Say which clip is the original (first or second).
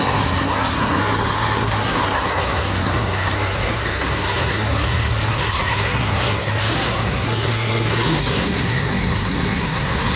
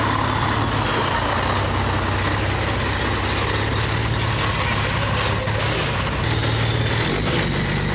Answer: second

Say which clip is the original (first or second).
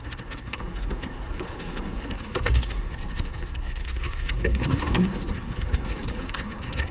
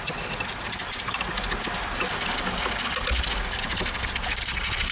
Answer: second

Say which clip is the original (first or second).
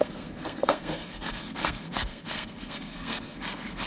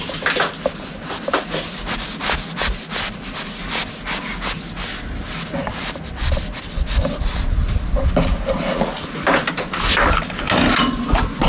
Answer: second